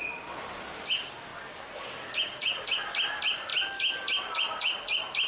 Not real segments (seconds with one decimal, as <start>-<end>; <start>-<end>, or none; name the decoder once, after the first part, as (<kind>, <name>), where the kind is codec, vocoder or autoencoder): none